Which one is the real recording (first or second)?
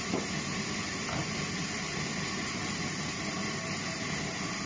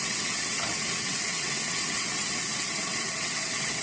first